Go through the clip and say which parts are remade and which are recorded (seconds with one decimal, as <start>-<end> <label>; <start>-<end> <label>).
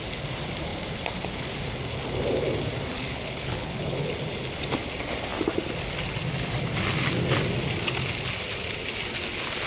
0.0-2.9 recorded; 2.9-4.1 remade; 4.1-9.7 recorded